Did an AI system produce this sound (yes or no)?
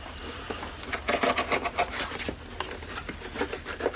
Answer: no